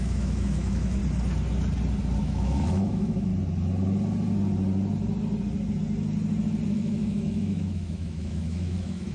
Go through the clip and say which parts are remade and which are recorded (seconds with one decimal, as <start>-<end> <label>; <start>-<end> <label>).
0.0-1.0 remade; 1.0-2.2 recorded; 2.2-3.3 remade; 3.3-6.7 recorded; 6.7-9.1 remade